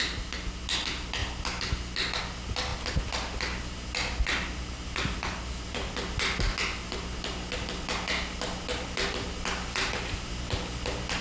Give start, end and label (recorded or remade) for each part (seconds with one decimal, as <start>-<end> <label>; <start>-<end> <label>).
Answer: 0.0-11.2 recorded